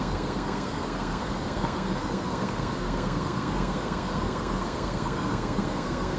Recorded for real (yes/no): no